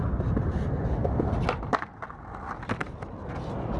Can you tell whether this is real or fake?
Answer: real